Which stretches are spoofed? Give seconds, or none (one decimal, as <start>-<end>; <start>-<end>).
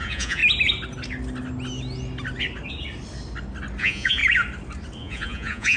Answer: 0.0-0.4; 3.8-4.2; 5.0-5.8